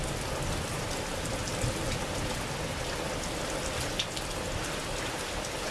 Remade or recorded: recorded